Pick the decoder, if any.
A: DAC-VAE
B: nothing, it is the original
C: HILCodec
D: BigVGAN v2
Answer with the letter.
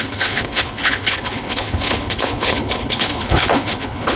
C